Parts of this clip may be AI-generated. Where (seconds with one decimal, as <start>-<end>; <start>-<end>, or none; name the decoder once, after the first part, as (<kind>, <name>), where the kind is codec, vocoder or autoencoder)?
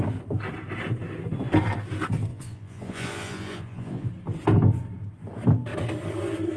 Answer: 2.3-4.1 (vocoder, Vocos)